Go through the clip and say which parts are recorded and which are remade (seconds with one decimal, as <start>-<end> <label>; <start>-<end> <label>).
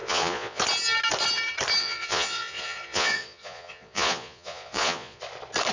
0.0-0.6 remade; 0.6-1.8 recorded; 1.8-5.2 remade; 5.2-5.7 recorded